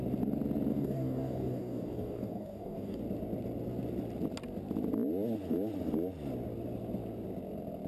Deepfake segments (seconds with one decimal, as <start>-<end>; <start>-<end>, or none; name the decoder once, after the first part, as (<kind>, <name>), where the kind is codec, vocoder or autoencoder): 0.7-3.0 (codec, DAC)